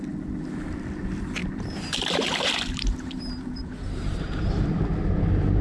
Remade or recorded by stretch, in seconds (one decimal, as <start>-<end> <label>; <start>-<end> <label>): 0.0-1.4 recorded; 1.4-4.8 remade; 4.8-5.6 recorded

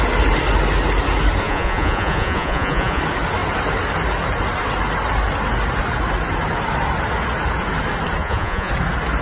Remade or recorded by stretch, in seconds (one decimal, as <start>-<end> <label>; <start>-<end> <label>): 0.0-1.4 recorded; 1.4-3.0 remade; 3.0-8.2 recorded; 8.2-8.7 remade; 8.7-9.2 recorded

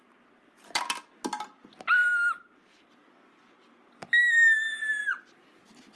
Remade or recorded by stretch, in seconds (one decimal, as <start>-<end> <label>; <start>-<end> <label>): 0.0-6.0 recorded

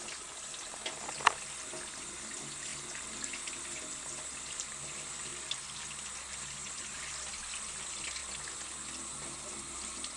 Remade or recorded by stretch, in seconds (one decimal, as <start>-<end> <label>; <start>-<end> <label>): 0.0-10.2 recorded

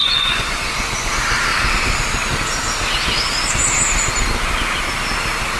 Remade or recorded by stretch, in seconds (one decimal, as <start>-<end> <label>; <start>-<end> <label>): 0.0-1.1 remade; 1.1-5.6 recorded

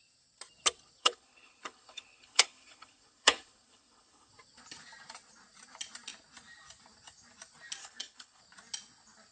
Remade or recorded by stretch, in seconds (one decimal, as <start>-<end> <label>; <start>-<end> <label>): 0.0-1.0 recorded; 1.0-4.3 remade; 4.3-7.8 recorded; 7.8-8.4 remade; 8.4-9.3 recorded